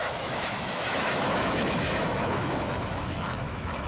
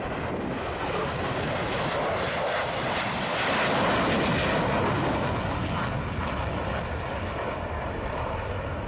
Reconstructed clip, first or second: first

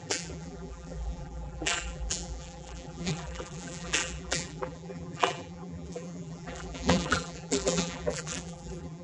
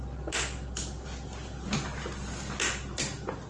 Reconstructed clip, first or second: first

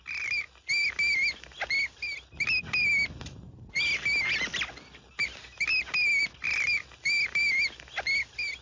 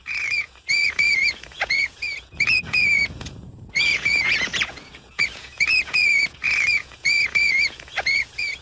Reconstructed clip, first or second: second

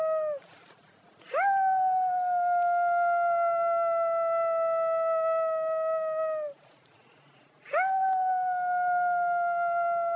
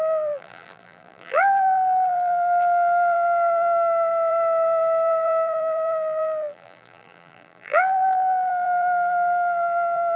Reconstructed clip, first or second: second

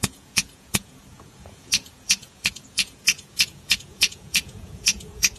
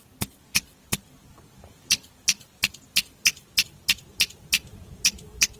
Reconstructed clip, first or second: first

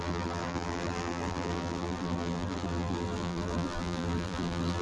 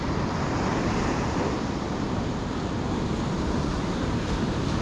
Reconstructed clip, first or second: first